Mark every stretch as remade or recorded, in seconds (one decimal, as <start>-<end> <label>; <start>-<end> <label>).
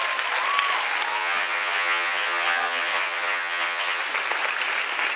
0.0-1.1 recorded; 1.1-4.0 remade; 4.0-5.2 recorded